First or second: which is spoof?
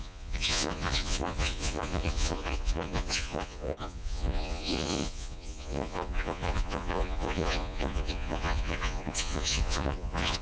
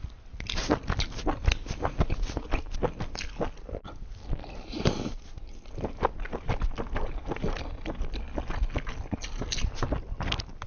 first